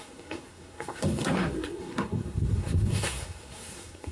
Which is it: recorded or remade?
remade